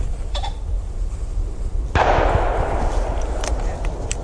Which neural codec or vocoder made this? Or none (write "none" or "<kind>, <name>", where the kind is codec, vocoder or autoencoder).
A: none